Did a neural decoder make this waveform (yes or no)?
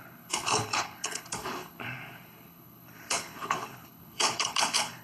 yes